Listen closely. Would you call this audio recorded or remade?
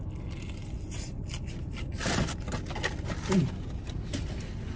recorded